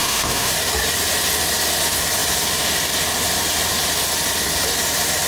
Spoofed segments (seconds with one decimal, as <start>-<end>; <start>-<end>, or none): 0.0-0.5